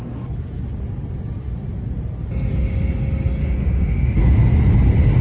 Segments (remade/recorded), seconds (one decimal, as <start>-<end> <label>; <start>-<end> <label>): 0.0-3.4 recorded; 3.4-4.2 remade; 4.2-5.2 recorded

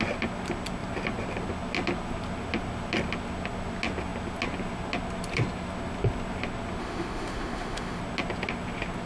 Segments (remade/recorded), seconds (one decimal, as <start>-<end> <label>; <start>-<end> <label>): 0.0-6.8 recorded; 6.8-8.0 remade; 8.0-9.1 recorded

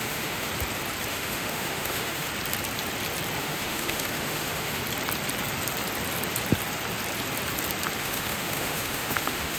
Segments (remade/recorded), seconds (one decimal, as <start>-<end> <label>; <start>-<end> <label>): 0.0-0.5 remade; 0.5-1.1 recorded; 1.1-2.3 remade; 2.3-3.4 recorded; 3.4-4.8 remade; 4.8-8.0 recorded; 8.0-9.6 remade

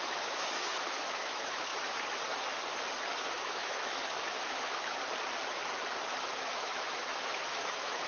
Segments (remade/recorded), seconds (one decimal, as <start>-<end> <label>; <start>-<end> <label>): 0.0-1.7 remade; 1.7-3.3 recorded; 3.3-5.0 remade; 5.0-6.2 recorded; 6.2-8.1 remade

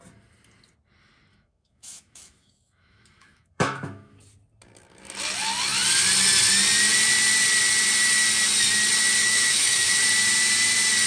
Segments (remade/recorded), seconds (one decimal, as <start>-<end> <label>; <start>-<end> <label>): 0.0-1.3 recorded; 1.3-4.2 remade; 4.2-9.2 recorded; 9.2-10.0 remade; 10.0-11.1 recorded